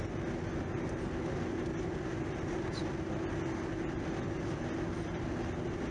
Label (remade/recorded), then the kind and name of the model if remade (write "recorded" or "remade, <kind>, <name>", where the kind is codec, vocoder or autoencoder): recorded